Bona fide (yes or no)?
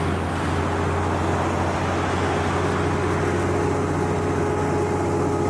yes